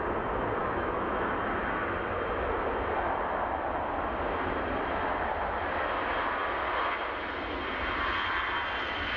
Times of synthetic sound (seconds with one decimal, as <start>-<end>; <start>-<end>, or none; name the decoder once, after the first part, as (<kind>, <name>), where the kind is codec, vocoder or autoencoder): 0.6-1.3 (autoencoder, DAC-VAE)